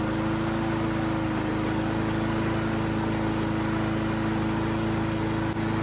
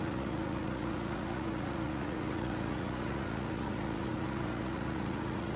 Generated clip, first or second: second